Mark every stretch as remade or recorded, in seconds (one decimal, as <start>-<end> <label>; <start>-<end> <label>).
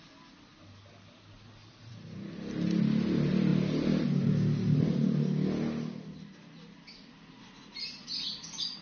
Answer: 0.0-1.6 recorded; 1.6-2.3 remade; 2.3-8.8 recorded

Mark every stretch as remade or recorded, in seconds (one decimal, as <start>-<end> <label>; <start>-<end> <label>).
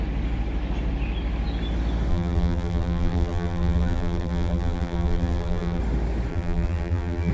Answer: 0.0-2.1 recorded; 2.1-5.8 remade; 5.8-6.3 recorded; 6.3-7.3 remade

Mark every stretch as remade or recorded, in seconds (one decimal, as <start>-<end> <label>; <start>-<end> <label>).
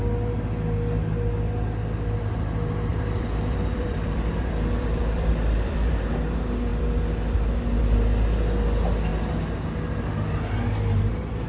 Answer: 0.0-2.9 recorded; 2.9-5.9 remade; 5.9-6.7 recorded; 6.7-7.8 remade; 7.8-11.5 recorded